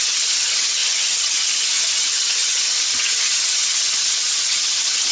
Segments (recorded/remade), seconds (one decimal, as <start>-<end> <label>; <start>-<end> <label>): 0.0-5.1 remade